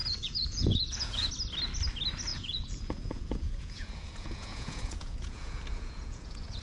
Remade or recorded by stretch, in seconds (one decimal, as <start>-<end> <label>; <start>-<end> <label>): 0.0-1.3 remade; 1.3-2.3 recorded; 2.3-6.6 remade